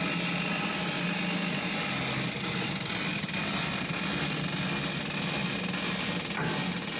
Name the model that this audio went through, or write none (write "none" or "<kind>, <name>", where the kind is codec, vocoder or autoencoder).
none